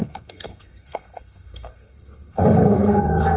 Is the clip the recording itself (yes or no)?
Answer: no